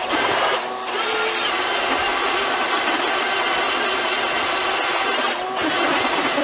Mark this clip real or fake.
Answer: real